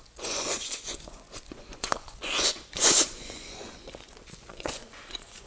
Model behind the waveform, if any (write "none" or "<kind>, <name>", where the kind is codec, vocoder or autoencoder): vocoder, Vocos